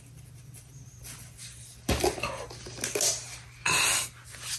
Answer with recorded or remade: recorded